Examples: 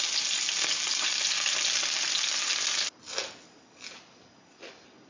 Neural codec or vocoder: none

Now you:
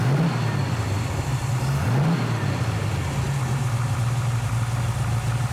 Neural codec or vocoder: none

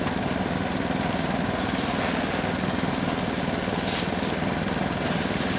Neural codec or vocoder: none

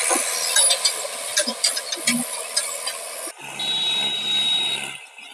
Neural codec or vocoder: none